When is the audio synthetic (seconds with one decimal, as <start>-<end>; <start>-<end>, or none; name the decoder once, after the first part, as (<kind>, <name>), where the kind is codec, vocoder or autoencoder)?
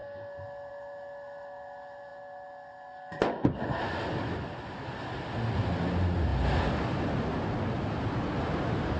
none